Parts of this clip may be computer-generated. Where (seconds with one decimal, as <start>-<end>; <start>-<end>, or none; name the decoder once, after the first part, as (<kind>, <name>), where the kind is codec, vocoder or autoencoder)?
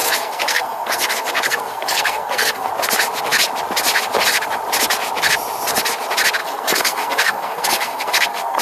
0.0-2.7 (codec, SNAC); 6.4-8.6